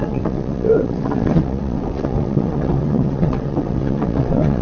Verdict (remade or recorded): remade